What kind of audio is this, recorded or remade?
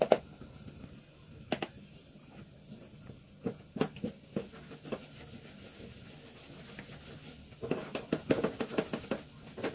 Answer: recorded